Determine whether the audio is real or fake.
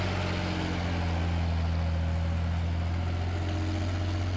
real